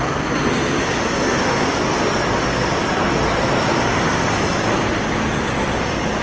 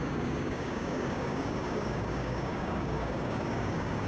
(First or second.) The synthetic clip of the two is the second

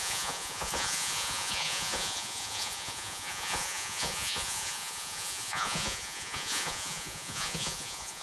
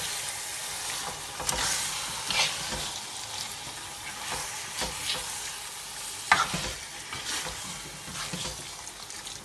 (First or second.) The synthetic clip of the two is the first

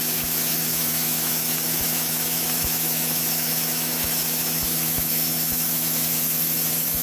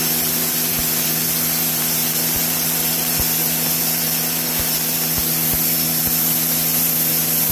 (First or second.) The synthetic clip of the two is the first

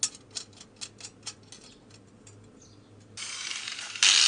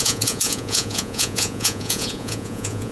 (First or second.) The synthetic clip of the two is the second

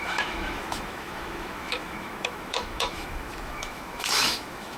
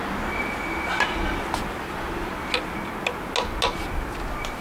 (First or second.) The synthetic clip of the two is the first